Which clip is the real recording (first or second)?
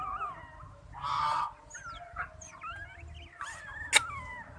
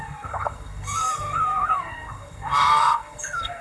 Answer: first